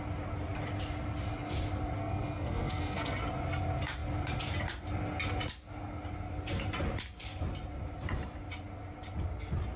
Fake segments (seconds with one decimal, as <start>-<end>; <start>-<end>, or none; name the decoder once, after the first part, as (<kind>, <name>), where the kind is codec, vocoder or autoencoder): 2.0-3.2 (codec, SNAC)